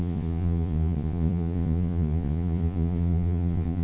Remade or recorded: remade